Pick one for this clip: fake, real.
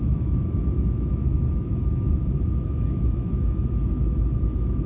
fake